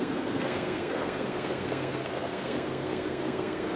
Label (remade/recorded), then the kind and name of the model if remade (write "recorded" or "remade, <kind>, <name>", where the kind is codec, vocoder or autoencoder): remade, codec, SNAC